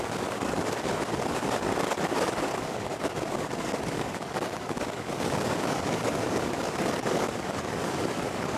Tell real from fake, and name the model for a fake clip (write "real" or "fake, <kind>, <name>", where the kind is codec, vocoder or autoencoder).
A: fake, codec, DAC